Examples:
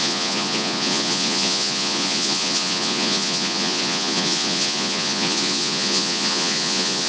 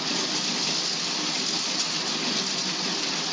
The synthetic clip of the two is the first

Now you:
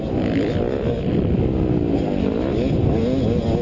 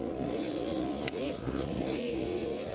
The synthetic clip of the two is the second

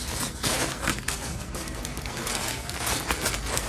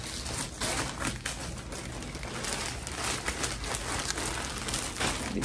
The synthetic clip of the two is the first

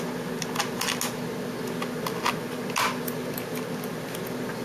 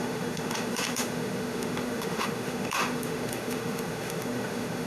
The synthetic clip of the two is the second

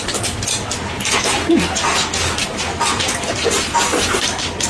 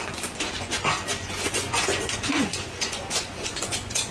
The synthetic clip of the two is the second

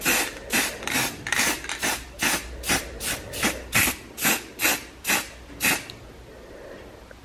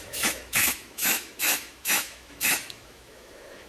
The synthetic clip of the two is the second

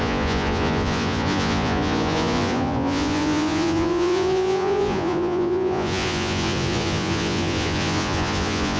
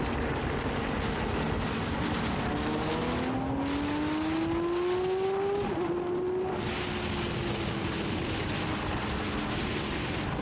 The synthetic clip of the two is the first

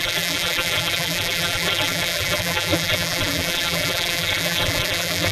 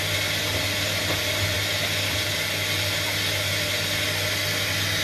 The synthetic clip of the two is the first